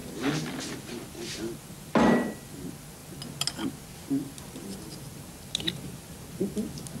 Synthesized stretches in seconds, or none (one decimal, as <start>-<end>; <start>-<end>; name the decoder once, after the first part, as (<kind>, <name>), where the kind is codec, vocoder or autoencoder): none